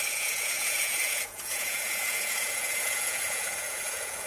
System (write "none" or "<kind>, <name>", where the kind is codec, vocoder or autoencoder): vocoder, Vocos